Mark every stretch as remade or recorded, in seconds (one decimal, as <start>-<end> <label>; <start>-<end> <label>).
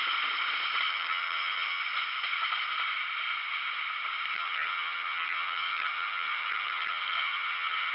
0.0-0.9 recorded; 0.9-1.8 remade; 1.8-4.3 recorded; 4.3-7.9 remade